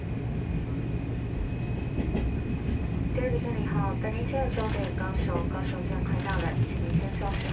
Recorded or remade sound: recorded